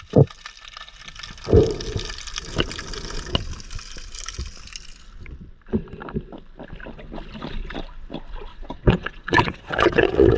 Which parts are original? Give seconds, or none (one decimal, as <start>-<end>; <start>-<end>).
0.0-8.5